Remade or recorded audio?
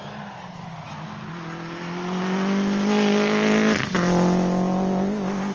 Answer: recorded